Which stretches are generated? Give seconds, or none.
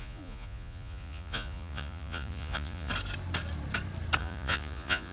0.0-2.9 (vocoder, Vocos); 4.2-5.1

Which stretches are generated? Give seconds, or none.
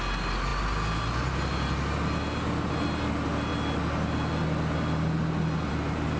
none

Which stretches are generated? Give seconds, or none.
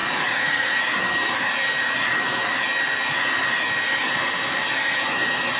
0.0-0.8 (vocoder, Vocos)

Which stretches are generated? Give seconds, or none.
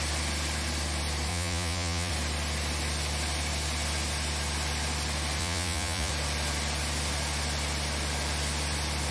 1.3-2.1 (vocoder, Vocos); 5.4-6.1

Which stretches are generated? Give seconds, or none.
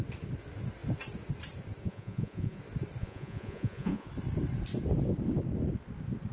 1.8-2.6 (vocoder, Vocos); 3.0-4.1